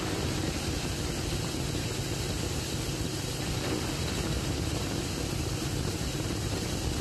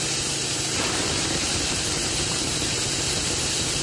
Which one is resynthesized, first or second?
second